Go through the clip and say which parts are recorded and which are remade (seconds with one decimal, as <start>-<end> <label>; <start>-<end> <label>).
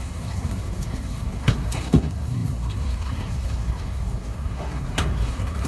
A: 0.0-5.7 remade